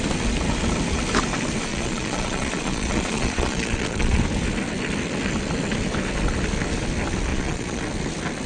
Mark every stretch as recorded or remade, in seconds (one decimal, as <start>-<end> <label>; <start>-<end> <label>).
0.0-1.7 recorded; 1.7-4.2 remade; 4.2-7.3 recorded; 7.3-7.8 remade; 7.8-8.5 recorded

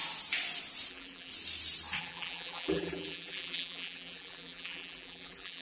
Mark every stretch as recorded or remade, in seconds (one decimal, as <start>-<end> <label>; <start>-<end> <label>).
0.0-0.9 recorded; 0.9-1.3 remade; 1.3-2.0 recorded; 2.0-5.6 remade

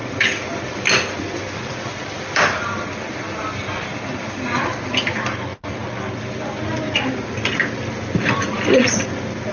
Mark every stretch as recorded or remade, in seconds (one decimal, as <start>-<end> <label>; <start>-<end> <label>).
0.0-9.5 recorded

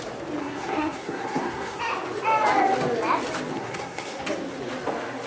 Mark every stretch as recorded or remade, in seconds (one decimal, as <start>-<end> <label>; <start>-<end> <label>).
0.0-0.4 recorded; 0.4-1.8 remade; 1.8-3.5 recorded; 3.5-4.2 remade; 4.2-5.3 recorded

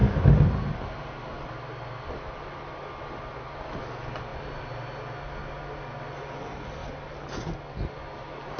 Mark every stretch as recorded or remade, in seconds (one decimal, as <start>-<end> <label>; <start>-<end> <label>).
0.0-8.6 recorded

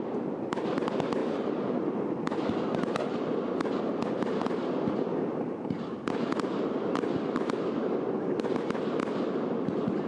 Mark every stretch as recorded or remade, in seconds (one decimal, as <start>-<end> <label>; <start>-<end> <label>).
0.0-10.1 recorded

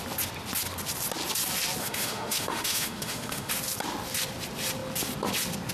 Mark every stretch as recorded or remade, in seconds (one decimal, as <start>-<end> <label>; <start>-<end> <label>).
0.0-1.8 recorded; 1.8-3.5 remade; 3.5-5.7 recorded

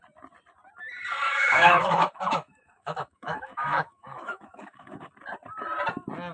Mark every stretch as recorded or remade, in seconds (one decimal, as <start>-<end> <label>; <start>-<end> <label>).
0.0-1.3 recorded; 1.3-5.1 remade; 5.1-6.3 recorded